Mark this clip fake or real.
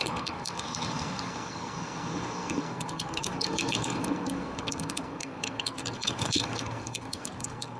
fake